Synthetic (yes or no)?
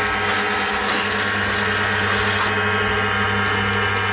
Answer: no